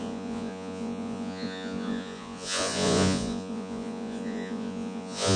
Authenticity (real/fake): fake